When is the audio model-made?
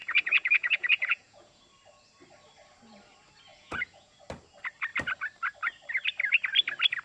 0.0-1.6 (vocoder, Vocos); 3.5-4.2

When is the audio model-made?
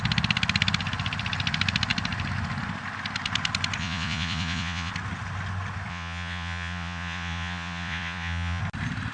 3.8-4.9 (vocoder, Vocos); 5.9-8.6